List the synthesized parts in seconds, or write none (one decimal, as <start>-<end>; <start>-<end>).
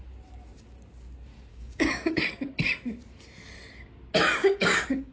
1.5-2.2; 4.4-5.1